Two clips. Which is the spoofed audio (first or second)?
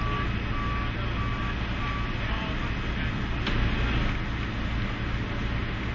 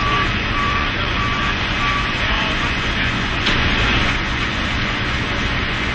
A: second